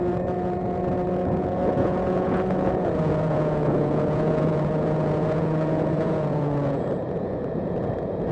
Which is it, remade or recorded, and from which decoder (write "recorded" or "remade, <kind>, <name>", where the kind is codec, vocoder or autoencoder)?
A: remade, vocoder, Vocos